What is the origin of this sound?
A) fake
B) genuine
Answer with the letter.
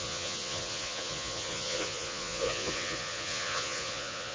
A